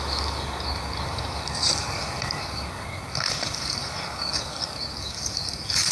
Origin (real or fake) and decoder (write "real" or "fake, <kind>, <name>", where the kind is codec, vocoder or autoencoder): fake, codec, DAC